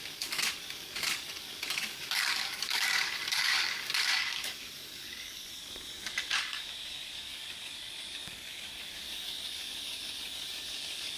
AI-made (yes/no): yes